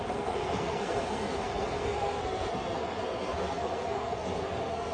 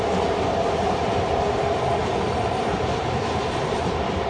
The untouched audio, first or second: second